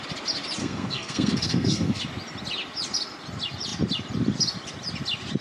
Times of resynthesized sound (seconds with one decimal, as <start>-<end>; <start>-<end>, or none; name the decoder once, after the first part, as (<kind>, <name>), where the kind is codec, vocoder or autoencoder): 0.6-2.0 (codec, SNAC)